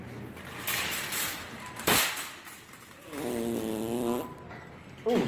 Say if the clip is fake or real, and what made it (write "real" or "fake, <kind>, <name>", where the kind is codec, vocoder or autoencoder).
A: real